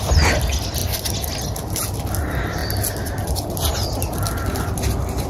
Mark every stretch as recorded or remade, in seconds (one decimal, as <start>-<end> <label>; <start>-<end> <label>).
0.0-5.3 recorded